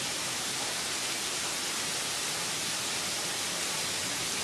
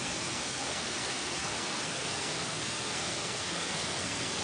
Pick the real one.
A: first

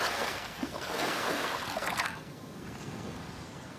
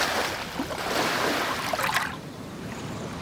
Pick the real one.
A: second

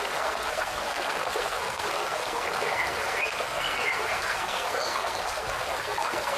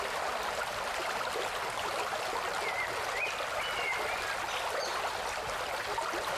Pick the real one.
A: second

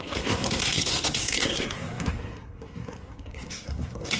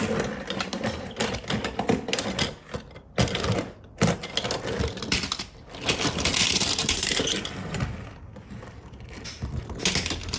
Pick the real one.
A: second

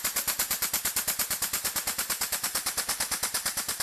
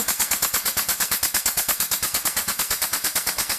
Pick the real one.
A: first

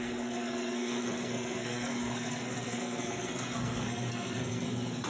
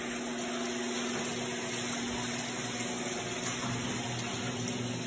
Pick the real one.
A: second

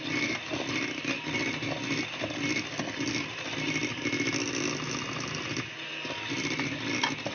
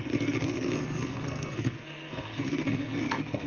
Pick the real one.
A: first